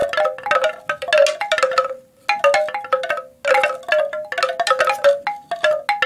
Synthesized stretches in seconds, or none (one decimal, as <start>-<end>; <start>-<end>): none